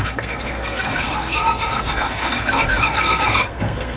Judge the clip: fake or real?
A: fake